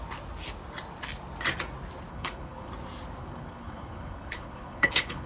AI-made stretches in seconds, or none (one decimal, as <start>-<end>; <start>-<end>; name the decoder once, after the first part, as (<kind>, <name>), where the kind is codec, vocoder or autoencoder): 2.1-2.7 (codec, HILCodec); 3.2-5.3